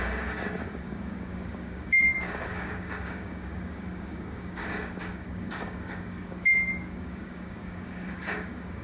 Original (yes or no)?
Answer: no